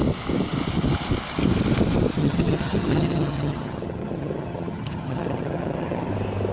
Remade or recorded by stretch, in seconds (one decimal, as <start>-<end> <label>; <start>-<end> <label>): 0.0-2.2 recorded; 2.2-6.1 remade; 6.1-6.5 recorded